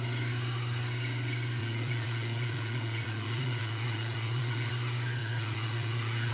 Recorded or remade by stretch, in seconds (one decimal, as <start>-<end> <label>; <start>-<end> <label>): 0.0-1.6 recorded; 1.6-4.7 remade; 4.7-5.2 recorded; 5.2-6.3 remade